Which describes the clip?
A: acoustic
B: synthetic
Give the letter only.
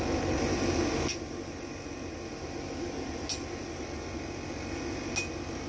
A